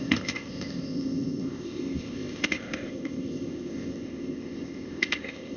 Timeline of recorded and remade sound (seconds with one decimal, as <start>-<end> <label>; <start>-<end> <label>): 0.0-5.6 remade